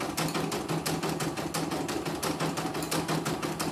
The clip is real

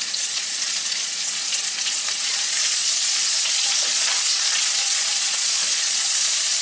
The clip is fake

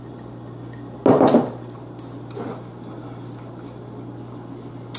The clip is real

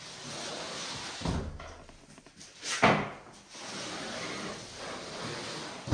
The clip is real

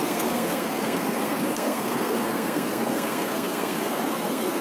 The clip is fake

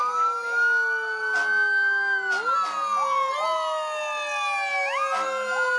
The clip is real